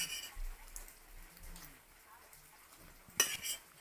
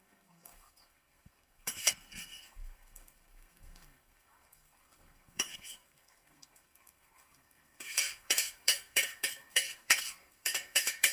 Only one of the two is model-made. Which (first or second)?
second